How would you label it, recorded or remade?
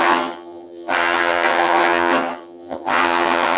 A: remade